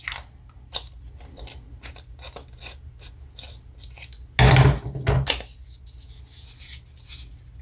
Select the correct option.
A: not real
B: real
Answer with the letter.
B